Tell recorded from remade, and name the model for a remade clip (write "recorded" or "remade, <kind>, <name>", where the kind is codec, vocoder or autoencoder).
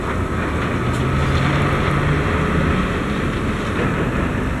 recorded